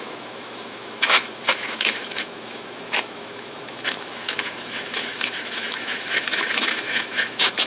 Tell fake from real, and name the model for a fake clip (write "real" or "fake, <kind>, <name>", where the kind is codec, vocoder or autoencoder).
fake, autoencoder, DAC-VAE